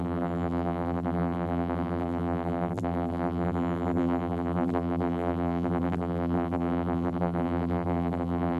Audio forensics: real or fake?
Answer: fake